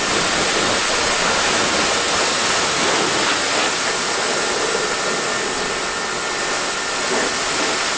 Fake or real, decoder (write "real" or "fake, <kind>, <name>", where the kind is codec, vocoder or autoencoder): real